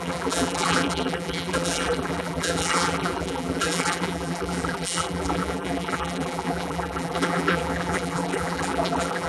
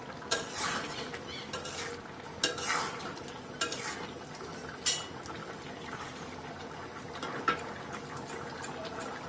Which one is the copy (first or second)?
first